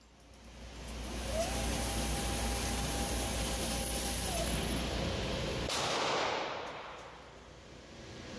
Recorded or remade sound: recorded